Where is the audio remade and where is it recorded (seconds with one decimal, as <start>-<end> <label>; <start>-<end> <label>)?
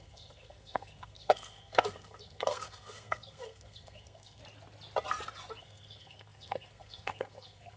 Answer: 0.0-4.4 remade; 4.4-5.6 recorded; 5.6-7.8 remade